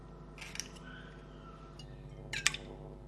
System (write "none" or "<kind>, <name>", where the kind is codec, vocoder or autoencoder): none